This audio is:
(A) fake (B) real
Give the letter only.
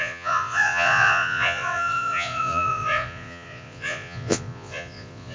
A